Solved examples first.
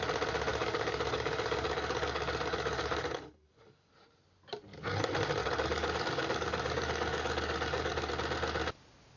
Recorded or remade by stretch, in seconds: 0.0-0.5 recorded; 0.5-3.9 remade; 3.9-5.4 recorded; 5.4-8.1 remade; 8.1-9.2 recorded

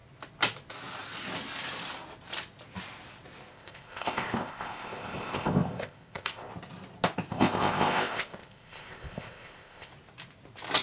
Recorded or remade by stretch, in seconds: 0.0-3.5 recorded; 3.5-6.5 remade; 6.5-7.3 recorded; 7.3-9.9 remade; 9.9-10.8 recorded

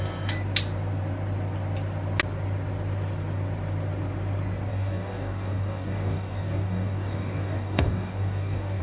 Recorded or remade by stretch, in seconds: 0.0-4.7 recorded; 4.7-8.8 remade

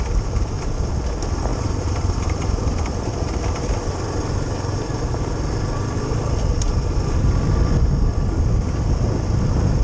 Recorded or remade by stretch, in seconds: 0.0-1.5 recorded; 1.5-5.2 remade; 5.2-9.8 recorded

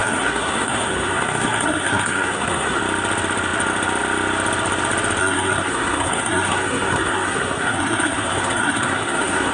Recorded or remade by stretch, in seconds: 0.0-2.8 remade; 2.8-5.2 recorded; 5.2-9.5 remade

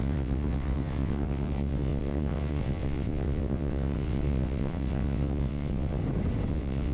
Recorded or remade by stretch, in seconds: 0.0-6.0 remade; 6.0-6.5 recorded; 6.5-6.9 remade

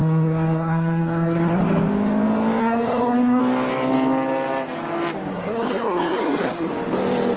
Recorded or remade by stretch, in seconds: 0.0-1.6 remade; 1.6-2.6 recorded; 2.6-3.4 remade; 3.4-5.3 recorded; 5.3-6.7 remade; 6.7-7.4 recorded